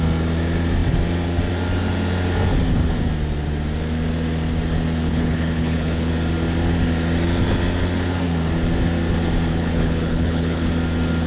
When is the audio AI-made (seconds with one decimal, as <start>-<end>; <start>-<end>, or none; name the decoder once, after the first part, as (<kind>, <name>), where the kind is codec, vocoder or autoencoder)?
5.0-6.1 (codec, HILCodec); 9.5-10.7